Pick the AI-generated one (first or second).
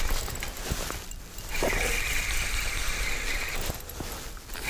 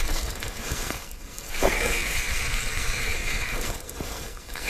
second